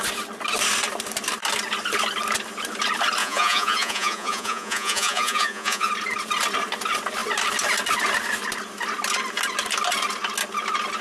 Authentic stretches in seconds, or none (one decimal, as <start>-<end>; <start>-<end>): 0.0-3.2; 5.9-11.0